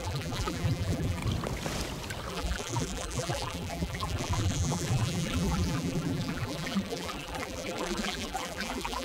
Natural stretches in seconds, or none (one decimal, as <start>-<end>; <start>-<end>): 1.2-2.3

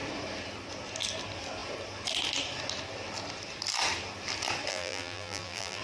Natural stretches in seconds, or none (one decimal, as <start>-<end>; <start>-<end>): 0.0-4.7